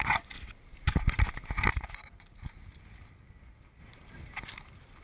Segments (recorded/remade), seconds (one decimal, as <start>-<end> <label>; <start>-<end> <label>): 0.0-5.0 recorded